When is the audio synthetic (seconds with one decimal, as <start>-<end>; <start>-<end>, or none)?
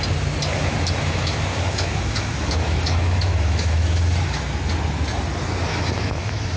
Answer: 0.5-4.5; 5.7-6.6